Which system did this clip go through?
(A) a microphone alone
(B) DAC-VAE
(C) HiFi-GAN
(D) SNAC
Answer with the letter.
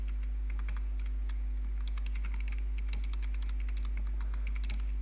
A